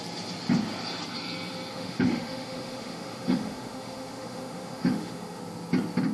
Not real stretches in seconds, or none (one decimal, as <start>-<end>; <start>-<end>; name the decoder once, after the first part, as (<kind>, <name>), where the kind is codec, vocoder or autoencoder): 1.7-5.4 (autoencoder, DAC-VAE)